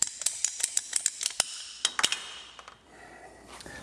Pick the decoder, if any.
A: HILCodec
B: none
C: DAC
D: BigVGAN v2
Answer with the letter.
B